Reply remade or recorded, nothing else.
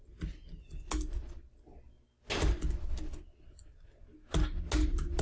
recorded